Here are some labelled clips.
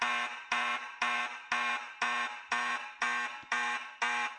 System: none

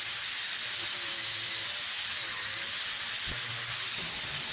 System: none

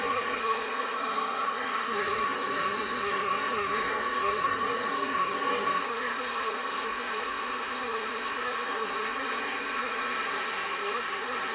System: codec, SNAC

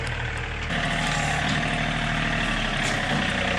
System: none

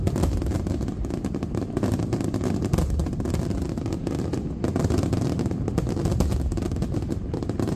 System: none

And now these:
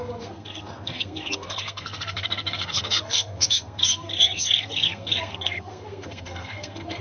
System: codec, SNAC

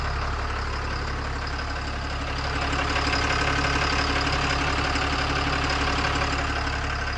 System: none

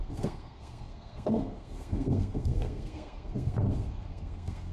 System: codec, SNAC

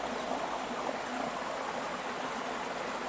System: none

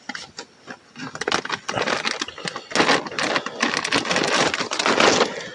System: none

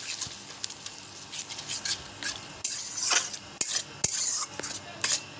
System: none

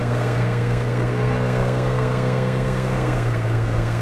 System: codec, SNAC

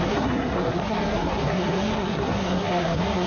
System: codec, SNAC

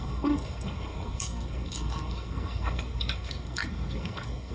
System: codec, SNAC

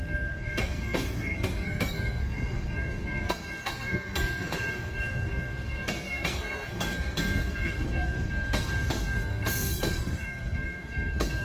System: codec, SNAC